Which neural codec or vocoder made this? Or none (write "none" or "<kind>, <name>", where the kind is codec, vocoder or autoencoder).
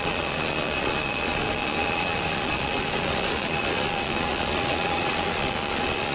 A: vocoder, Vocos